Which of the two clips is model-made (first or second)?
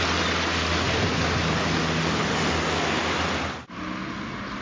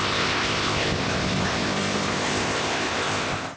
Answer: second